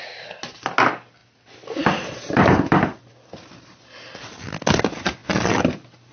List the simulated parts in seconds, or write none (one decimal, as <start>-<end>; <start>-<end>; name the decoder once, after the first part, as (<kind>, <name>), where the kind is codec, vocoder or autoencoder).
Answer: 1.2-3.0 (vocoder, BigVGAN v2)